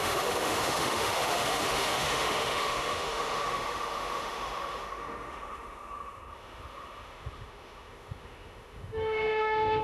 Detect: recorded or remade remade